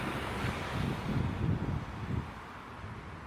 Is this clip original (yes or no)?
yes